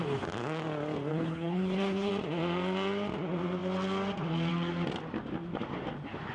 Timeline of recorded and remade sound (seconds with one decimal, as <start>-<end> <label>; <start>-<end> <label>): 0.0-1.1 recorded; 1.1-2.1 remade; 2.1-6.3 recorded